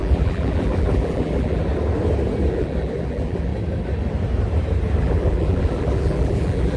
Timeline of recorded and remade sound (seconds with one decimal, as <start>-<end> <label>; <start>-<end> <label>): 0.0-1.6 remade; 1.6-2.5 recorded; 2.5-3.5 remade; 3.5-5.0 recorded; 5.0-6.8 remade